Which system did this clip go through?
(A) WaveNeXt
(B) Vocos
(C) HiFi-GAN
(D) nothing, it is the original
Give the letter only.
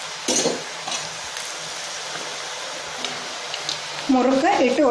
D